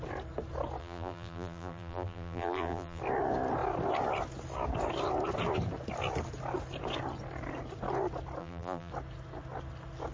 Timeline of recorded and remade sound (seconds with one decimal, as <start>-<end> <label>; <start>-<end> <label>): 0.0-0.8 recorded; 0.8-3.0 remade; 3.0-8.4 recorded; 8.4-8.9 remade; 8.9-10.1 recorded